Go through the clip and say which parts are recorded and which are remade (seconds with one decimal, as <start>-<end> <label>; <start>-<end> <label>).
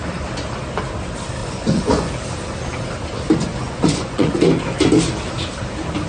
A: 0.0-1.4 recorded; 1.4-2.1 remade; 2.1-3.5 recorded; 3.5-4.4 remade; 4.4-6.1 recorded